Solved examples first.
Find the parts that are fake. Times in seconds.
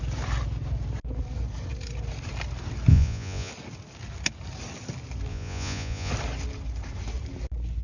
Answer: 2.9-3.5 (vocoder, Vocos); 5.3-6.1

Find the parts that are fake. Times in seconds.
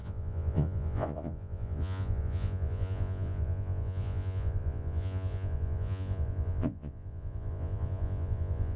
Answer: 0.0-8.8 (vocoder, Vocos)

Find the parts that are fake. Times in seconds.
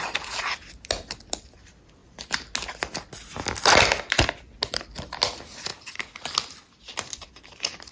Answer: none